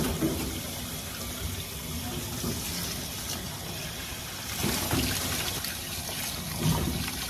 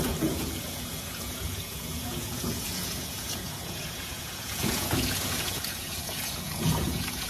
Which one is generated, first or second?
second